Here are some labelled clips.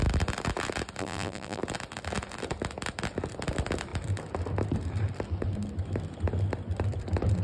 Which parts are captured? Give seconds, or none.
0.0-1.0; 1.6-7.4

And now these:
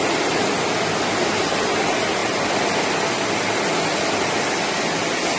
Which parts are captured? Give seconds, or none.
0.0-2.2; 2.8-5.4

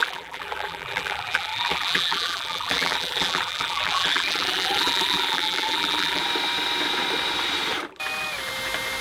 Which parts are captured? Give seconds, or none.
6.2-9.0

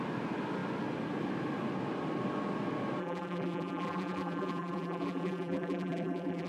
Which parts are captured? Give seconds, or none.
0.0-3.0

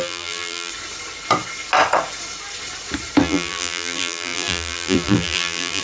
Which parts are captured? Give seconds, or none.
0.7-3.2

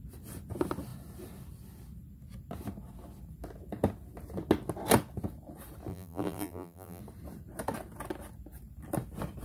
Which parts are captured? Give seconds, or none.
0.0-5.9; 7.0-9.4

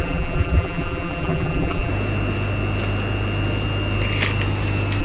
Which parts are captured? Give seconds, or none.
1.9-5.0

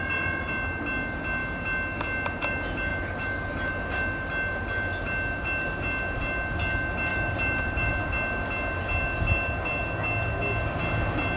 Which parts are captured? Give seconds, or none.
0.0-2.9; 3.7-7.1; 7.9-11.4